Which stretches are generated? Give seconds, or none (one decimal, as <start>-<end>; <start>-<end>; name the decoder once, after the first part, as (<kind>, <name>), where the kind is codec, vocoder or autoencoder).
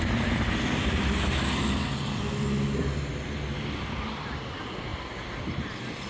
none